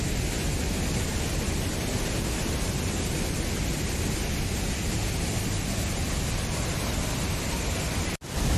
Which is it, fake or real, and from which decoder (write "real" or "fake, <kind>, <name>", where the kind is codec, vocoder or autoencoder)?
real